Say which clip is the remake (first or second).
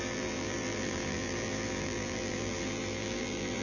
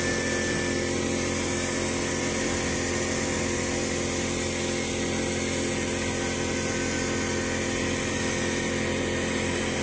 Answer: first